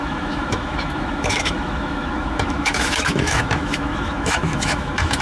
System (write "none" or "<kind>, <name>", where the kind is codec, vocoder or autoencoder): autoencoder, DAC-VAE